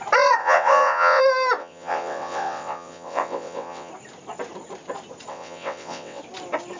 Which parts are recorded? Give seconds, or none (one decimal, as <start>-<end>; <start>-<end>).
0.0-0.4; 1.2-1.6; 3.9-5.3; 6.2-6.8